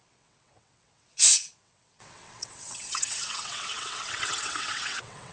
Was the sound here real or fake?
fake